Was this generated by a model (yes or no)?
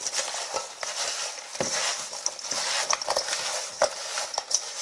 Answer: no